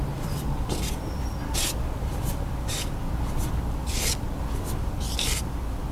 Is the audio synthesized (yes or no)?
no